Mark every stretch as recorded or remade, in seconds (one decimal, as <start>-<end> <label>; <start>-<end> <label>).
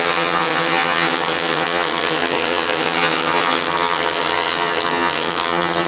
0.0-5.9 remade